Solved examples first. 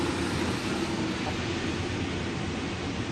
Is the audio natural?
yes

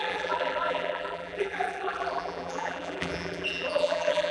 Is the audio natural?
no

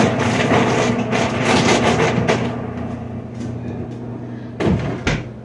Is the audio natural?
yes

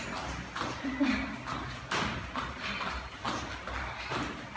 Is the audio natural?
yes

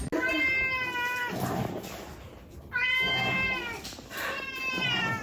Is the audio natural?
yes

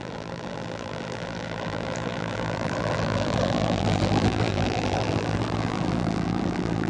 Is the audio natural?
no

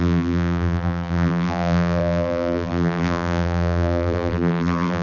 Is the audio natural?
no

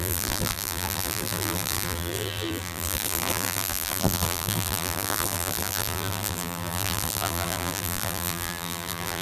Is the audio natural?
no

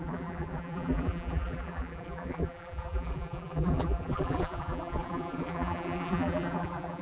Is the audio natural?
no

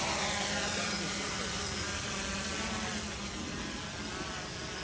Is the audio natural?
no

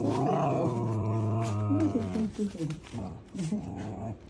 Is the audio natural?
no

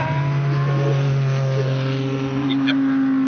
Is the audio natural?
yes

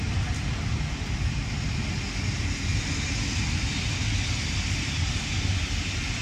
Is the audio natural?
yes